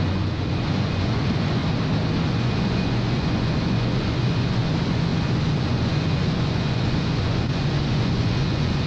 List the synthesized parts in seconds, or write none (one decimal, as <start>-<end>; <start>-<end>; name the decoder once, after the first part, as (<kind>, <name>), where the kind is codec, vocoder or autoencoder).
0.0-1.6 (vocoder, Vocos); 2.2-8.9

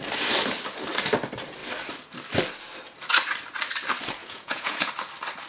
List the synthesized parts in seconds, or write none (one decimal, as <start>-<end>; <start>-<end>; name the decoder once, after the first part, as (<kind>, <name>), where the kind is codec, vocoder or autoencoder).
4.2-4.9 (vocoder, Vocos)

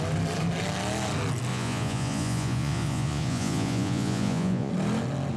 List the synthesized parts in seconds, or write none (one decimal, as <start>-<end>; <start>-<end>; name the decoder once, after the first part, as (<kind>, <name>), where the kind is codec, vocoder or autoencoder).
1.5-4.7 (vocoder, Vocos)